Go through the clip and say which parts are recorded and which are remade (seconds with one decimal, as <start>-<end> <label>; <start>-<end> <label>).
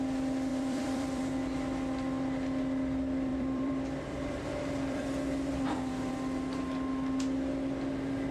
0.0-0.5 recorded; 0.5-1.2 remade; 1.2-3.3 recorded; 3.3-6.1 remade; 6.1-8.3 recorded